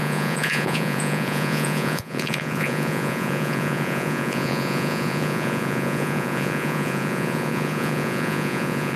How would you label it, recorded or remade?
remade